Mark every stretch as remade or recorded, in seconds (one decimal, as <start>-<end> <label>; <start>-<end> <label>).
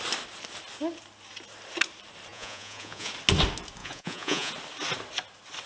0.0-2.3 recorded; 2.3-3.1 remade; 3.1-3.8 recorded; 3.8-4.5 remade; 4.5-5.7 recorded